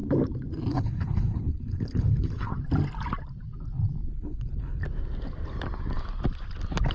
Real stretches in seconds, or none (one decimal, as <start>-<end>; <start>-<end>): 0.0-0.7; 2.5-4.1; 4.8-6.9